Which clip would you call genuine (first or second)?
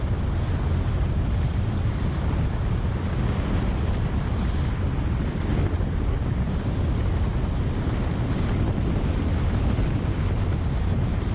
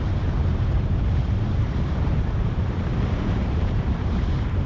first